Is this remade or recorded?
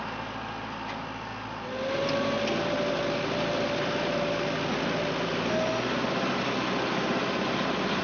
recorded